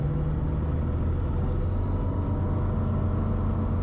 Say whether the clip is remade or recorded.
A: recorded